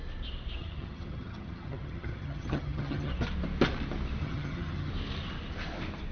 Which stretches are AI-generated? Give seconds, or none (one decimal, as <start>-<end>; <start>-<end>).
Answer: 0.6-3.1; 4.2-4.9